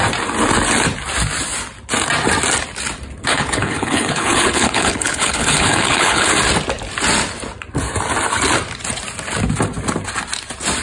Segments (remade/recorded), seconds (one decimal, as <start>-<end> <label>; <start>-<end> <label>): 0.0-3.3 recorded; 3.3-6.3 remade; 6.3-10.8 recorded